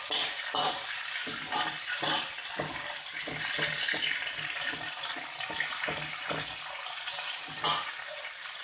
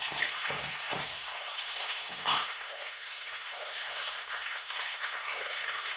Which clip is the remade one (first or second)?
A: second